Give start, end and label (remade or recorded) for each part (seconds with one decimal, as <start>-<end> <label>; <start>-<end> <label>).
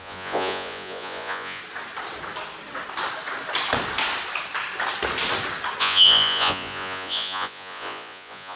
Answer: 0.0-1.6 remade; 1.6-5.8 recorded; 5.8-8.6 remade